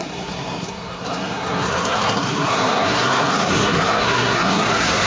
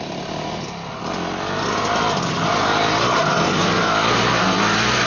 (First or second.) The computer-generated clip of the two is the first